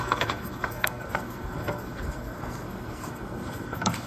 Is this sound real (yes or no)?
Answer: no